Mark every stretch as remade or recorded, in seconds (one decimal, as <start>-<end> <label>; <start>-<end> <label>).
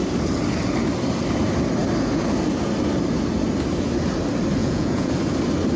0.0-4.6 recorded; 4.6-5.1 remade; 5.1-5.8 recorded